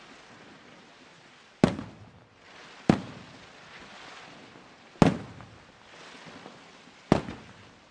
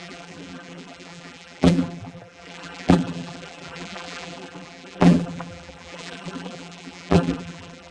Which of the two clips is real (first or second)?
first